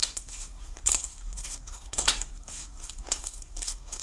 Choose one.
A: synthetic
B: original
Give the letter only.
A